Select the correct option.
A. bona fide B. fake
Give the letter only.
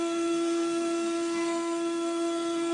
B